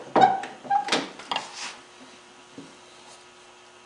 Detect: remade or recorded recorded